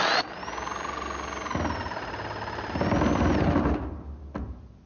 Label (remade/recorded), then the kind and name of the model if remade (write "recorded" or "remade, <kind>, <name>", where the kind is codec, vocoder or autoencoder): recorded